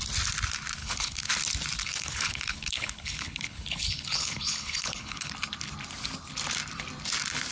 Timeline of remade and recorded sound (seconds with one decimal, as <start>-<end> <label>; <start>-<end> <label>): 0.0-0.8 recorded; 0.8-1.3 remade; 1.3-1.8 recorded; 1.8-5.3 remade; 5.3-7.5 recorded